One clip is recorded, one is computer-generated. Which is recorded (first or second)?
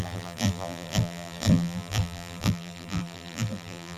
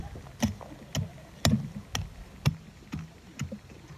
second